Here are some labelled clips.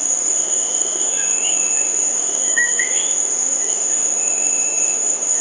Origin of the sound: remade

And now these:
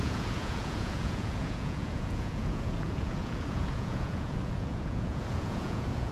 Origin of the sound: remade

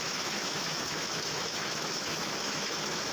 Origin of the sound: remade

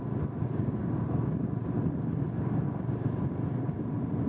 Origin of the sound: recorded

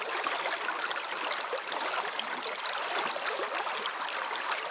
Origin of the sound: recorded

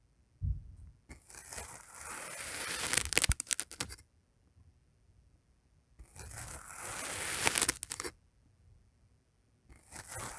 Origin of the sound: recorded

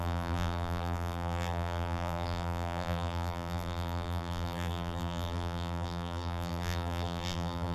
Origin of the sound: remade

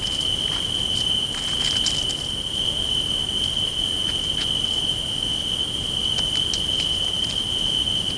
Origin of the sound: recorded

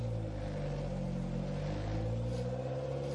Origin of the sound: recorded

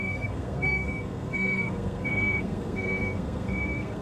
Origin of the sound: remade